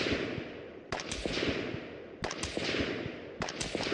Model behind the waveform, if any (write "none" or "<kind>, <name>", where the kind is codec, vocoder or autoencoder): none